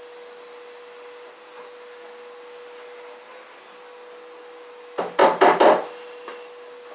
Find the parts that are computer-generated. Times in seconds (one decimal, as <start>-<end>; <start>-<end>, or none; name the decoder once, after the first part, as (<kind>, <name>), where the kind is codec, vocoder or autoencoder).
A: none